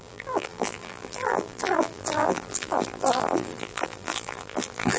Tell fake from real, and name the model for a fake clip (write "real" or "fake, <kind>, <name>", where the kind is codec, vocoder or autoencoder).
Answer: fake, vocoder, BigVGAN v2